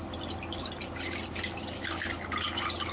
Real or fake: real